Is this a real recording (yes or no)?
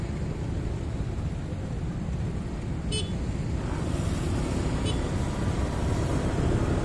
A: yes